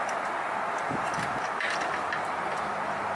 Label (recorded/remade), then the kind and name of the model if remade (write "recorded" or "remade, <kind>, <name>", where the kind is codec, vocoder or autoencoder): recorded